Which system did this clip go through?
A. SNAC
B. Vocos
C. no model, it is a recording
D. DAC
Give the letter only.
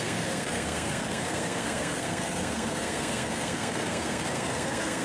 A